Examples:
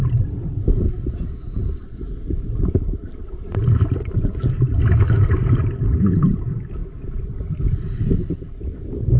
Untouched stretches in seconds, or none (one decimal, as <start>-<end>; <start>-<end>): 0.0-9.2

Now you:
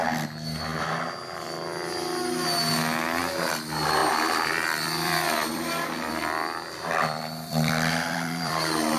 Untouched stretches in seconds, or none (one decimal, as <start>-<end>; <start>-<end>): 0.0-4.0

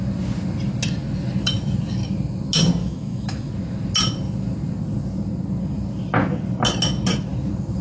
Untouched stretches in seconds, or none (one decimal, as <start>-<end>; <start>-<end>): 0.0-2.8; 3.5-7.8